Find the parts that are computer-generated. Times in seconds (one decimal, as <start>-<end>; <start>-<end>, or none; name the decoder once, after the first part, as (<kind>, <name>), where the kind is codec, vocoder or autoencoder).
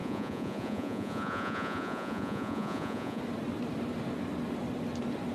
0.0-3.2 (vocoder, Vocos)